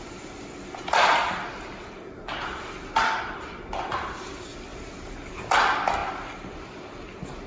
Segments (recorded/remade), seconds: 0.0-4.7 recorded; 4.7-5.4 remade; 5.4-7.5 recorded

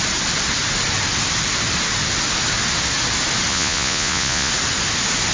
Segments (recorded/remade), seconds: 0.0-3.5 recorded; 3.5-4.5 remade; 4.5-5.3 recorded

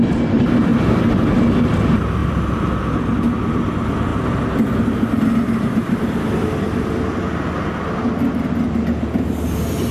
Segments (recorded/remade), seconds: 0.0-2.2 recorded; 2.2-2.9 remade; 2.9-9.9 recorded

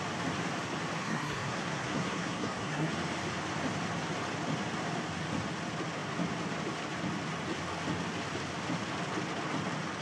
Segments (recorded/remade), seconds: 0.0-1.0 recorded; 1.0-2.9 remade; 2.9-10.0 recorded

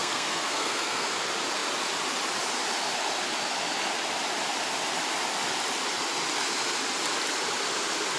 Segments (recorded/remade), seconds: 0.0-1.2 remade; 1.2-8.2 recorded

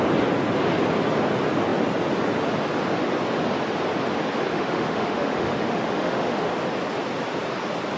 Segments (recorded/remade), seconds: 0.0-4.5 recorded; 4.5-6.5 remade; 6.5-8.0 recorded

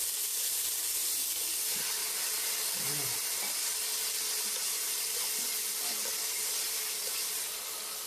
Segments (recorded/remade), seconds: 0.0-8.1 recorded